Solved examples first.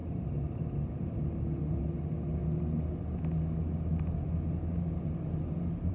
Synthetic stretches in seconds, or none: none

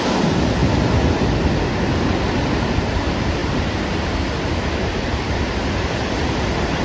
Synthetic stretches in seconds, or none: none